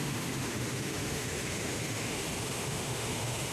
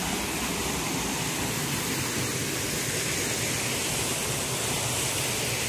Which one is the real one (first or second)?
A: second